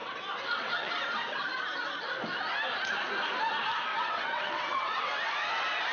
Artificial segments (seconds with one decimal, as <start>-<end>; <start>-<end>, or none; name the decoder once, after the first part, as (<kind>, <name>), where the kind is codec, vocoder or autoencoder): 0.0-0.9 (vocoder, WaveNeXt); 3.9-5.3